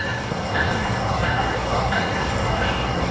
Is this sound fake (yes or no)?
yes